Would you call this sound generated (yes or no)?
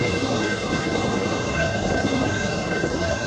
yes